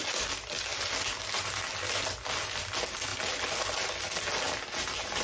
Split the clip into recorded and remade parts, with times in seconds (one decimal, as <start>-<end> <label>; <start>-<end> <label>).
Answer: 0.0-5.2 recorded